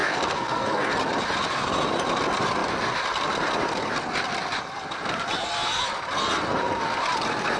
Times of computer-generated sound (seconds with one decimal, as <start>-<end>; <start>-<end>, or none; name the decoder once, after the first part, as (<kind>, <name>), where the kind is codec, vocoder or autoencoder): 0.0-0.9 (codec, SNAC)